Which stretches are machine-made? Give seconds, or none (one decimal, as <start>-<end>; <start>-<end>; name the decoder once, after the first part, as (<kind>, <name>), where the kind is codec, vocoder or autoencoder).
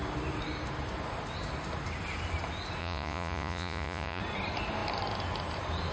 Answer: 2.8-4.2 (vocoder, Vocos)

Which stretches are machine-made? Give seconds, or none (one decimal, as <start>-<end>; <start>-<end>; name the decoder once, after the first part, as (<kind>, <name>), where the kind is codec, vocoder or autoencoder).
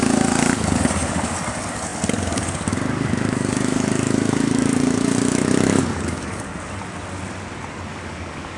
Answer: 0.0-6.5 (codec, DAC); 7.7-8.6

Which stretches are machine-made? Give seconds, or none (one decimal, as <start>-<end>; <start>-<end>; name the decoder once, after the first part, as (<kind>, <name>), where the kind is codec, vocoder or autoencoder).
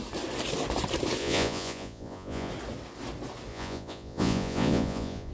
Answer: 1.2-2.5 (vocoder, Vocos); 3.5-5.3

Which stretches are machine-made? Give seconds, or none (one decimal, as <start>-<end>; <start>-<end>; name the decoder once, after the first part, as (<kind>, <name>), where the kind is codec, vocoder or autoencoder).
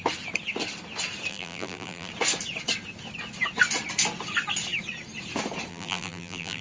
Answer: 1.3-2.1 (vocoder, BigVGAN v2); 5.7-6.6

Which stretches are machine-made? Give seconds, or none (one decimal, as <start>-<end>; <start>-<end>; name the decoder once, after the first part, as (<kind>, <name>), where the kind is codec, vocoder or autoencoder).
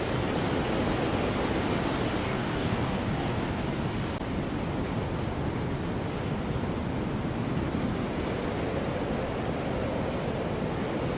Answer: 2.2-3.6 (codec, DAC)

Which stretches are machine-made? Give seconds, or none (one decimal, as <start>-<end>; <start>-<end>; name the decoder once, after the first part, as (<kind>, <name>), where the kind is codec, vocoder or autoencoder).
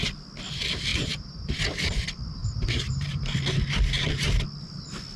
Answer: 0.9-1.5 (vocoder, BigVGAN v2); 2.4-3.2